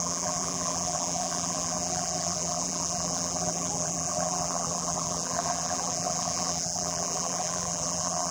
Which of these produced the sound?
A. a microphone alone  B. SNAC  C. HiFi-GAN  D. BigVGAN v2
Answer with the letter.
D